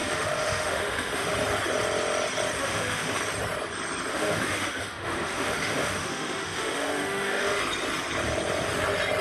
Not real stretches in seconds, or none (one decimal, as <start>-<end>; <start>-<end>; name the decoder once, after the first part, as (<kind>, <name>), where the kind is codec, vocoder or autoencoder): 0.0-1.3 (autoencoder, DAC-VAE); 2.6-3.2; 4.1-7.6